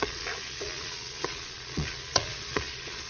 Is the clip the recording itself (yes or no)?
no